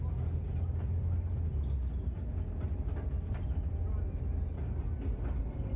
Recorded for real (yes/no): yes